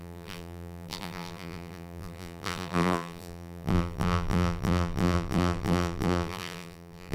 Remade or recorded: remade